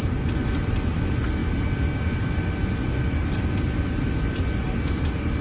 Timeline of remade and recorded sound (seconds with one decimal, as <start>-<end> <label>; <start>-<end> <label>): 0.0-5.4 recorded